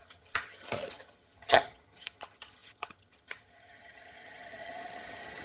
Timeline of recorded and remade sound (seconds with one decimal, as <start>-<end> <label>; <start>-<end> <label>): 0.0-5.4 remade